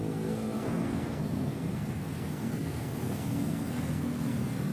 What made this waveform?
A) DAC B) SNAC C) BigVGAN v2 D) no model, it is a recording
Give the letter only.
B